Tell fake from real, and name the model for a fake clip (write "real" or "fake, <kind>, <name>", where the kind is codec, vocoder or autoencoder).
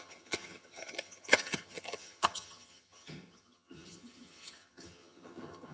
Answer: fake, vocoder, HiFi-GAN